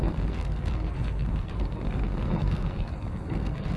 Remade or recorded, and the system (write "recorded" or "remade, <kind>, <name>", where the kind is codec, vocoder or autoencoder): remade, codec, SNAC